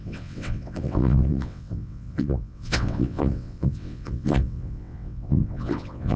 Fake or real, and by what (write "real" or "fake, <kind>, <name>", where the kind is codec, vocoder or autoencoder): fake, vocoder, WaveNeXt